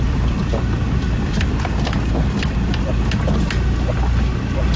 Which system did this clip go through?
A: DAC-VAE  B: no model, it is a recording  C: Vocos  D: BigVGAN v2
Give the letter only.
B